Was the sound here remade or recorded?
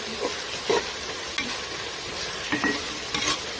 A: recorded